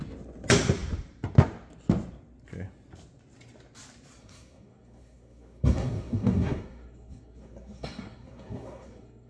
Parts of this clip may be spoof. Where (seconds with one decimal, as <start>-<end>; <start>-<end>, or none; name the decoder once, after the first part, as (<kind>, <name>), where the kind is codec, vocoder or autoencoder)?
4.2-9.3 (codec, SNAC)